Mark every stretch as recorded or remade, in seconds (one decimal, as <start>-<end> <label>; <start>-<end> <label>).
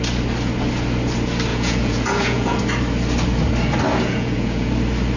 0.0-1.5 recorded; 1.5-2.6 remade; 2.6-3.9 recorded; 3.9-4.7 remade; 4.7-5.2 recorded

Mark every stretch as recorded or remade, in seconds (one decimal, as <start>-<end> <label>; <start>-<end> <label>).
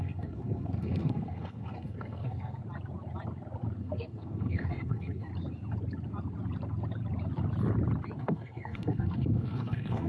0.0-2.6 remade; 2.6-3.8 recorded; 3.8-5.3 remade; 5.3-8.2 recorded; 8.2-10.1 remade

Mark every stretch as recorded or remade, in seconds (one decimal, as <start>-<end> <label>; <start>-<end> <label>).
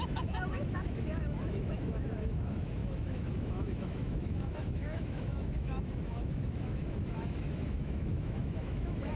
0.0-9.2 remade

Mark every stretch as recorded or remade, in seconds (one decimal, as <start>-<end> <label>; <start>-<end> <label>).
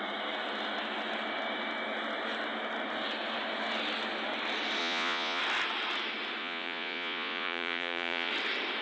0.0-4.8 recorded; 4.8-5.4 remade; 5.4-6.4 recorded; 6.4-8.3 remade; 8.3-8.8 recorded